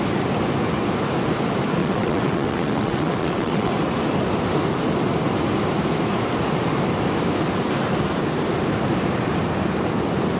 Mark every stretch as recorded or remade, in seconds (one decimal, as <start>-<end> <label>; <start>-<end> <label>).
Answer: 0.0-1.8 recorded; 1.8-3.7 remade; 3.7-10.4 recorded